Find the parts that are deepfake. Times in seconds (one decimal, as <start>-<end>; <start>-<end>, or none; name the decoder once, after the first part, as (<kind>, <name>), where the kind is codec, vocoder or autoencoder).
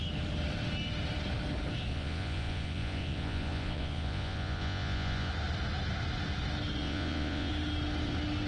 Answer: 1.9-5.3 (vocoder, Vocos); 6.8-7.5